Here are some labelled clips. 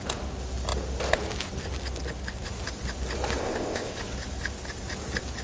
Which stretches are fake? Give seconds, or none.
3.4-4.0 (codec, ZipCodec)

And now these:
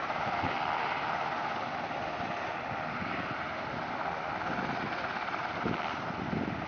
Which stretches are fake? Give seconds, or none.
none

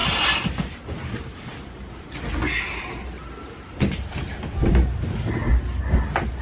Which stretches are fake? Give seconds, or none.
none

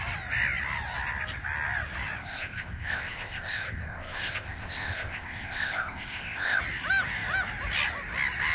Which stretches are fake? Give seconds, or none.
2.2-6.6 (codec, ZipCodec)